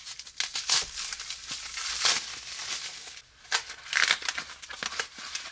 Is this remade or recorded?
recorded